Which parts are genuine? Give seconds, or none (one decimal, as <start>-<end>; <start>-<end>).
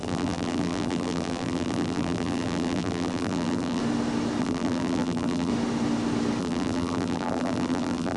3.8-4.4; 5.5-6.4